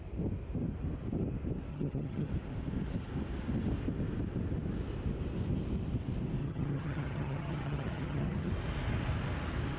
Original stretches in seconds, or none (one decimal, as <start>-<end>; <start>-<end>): 0.0-1.7; 2.3-6.4; 8.5-9.8